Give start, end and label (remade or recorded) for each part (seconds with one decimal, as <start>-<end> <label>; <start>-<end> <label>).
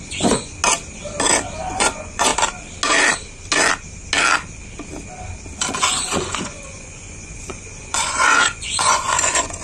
0.0-0.6 remade; 0.6-1.6 recorded; 1.6-2.3 remade; 2.3-5.7 recorded; 5.7-9.6 remade